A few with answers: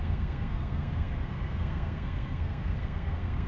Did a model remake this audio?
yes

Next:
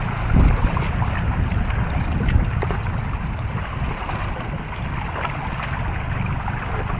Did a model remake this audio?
no